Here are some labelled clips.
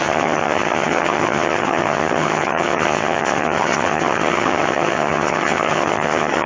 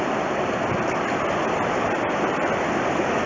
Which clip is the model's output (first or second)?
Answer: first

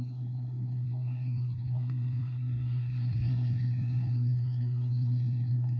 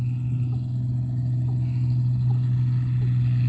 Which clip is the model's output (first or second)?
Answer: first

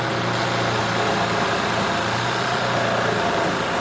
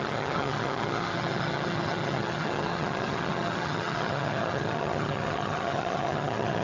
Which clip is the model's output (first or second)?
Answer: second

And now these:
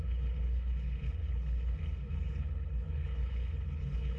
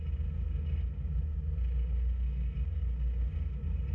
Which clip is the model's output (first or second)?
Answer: first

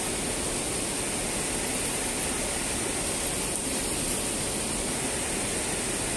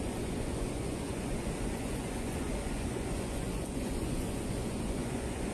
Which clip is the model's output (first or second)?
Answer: second